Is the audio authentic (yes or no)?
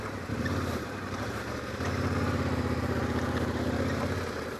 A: no